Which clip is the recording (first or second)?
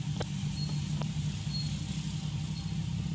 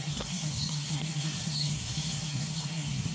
first